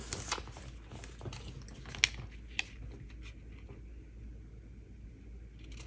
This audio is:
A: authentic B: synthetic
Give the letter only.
A